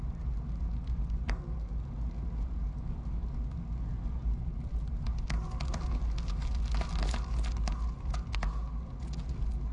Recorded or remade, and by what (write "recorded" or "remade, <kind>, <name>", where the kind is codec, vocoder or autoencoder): recorded